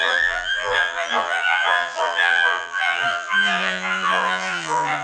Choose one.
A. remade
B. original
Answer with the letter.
A